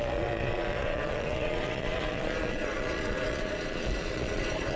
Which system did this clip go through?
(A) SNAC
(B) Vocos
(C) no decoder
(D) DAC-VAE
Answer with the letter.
B